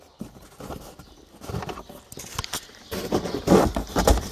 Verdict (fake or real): real